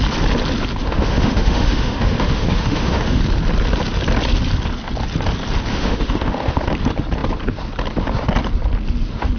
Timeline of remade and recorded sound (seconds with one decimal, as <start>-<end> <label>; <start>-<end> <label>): 0.0-0.8 recorded; 0.8-3.2 remade; 3.2-5.7 recorded; 5.7-6.6 remade; 6.6-9.4 recorded